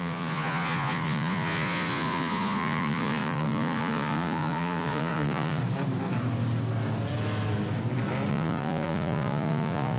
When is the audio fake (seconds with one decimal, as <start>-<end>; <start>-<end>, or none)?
0.0-5.6; 8.3-10.0

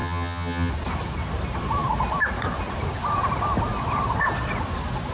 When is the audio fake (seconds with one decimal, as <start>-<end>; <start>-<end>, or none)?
0.0-0.7